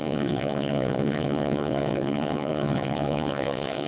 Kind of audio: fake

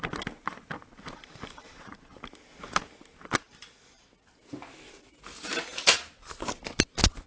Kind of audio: real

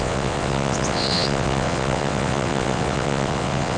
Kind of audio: fake